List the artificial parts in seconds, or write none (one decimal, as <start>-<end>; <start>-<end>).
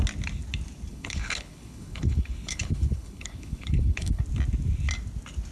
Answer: 0.9-4.2